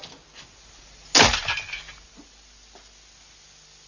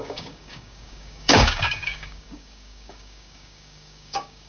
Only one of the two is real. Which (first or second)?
first